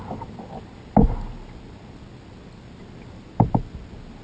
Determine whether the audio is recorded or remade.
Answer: recorded